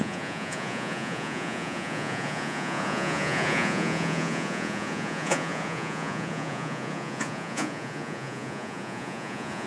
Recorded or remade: remade